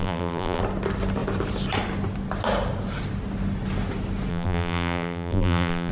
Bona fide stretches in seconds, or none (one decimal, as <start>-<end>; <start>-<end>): 0.6-4.3